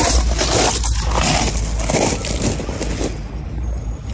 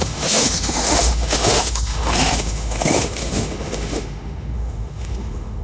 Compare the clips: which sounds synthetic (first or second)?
second